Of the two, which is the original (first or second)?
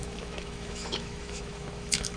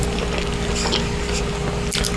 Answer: second